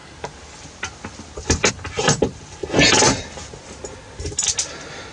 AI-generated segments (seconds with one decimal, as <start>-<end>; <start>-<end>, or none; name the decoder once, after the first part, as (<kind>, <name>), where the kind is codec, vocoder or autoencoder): none